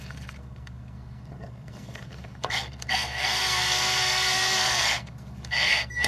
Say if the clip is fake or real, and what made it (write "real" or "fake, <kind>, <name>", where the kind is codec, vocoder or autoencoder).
fake, codec, SNAC